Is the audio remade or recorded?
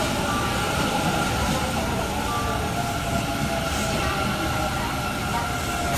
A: recorded